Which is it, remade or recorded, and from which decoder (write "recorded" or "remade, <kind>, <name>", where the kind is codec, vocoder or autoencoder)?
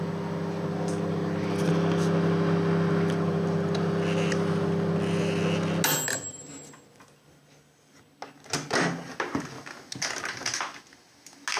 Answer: recorded